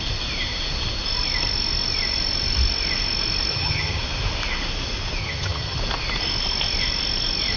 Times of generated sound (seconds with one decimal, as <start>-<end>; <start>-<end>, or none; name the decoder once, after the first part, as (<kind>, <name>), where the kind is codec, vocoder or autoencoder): 3.5-4.0 (vocoder, HiFi-GAN); 5.2-5.8